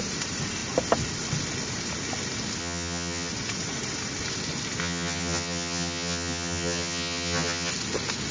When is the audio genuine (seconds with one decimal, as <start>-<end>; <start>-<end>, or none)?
0.0-2.6; 3.3-4.8; 7.7-8.3